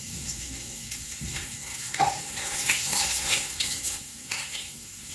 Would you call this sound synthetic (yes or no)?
yes